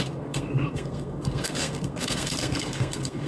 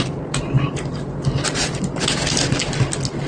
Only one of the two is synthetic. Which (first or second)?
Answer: first